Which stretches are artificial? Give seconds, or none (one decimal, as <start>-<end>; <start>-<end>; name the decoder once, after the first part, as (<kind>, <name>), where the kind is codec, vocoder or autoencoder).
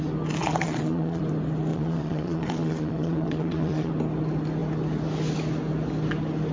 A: 0.4-1.2 (vocoder, Vocos); 1.7-3.9